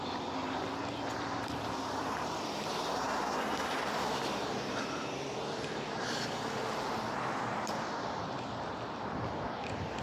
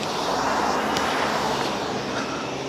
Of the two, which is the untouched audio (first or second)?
second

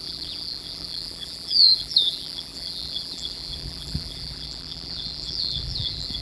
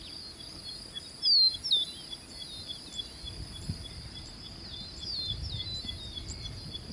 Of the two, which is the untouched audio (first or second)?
second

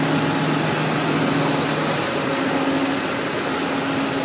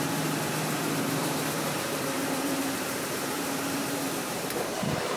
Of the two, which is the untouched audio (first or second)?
first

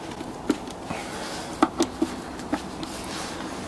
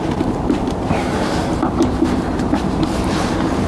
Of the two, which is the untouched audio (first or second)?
first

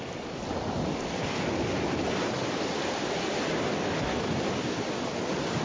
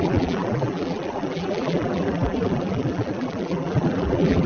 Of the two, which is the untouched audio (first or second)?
first